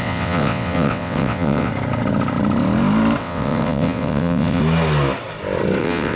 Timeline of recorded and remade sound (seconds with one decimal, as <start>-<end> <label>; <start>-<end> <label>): 0.0-1.7 remade; 1.7-3.2 recorded; 3.2-4.6 remade; 4.6-5.8 recorded; 5.8-6.2 remade